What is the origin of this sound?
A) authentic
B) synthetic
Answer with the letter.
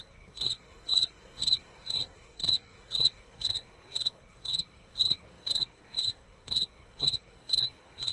B